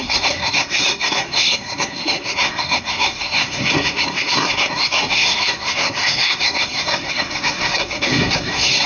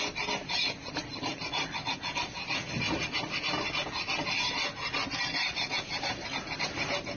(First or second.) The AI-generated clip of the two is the first